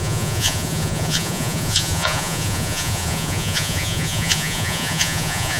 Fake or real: fake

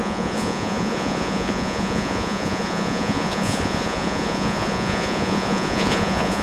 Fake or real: fake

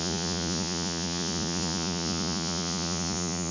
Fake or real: fake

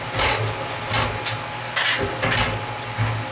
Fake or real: real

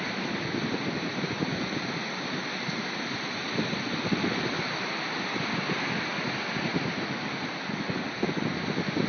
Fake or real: real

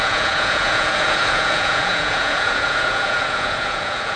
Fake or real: fake